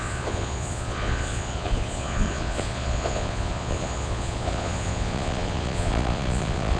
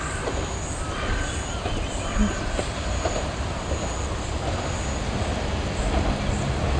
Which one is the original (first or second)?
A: second